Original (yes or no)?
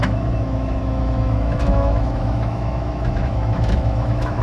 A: no